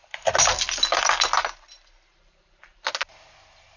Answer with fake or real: real